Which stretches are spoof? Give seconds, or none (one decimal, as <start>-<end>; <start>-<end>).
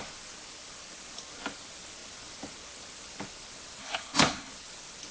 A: 3.8-4.5